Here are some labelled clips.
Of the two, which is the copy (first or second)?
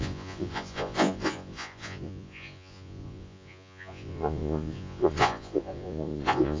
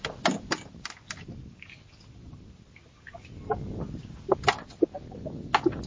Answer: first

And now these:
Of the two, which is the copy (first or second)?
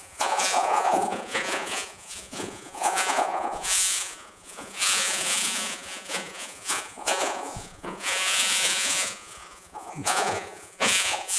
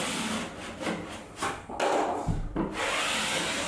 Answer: first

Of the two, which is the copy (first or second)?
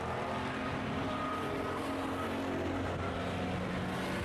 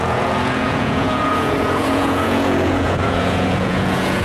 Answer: second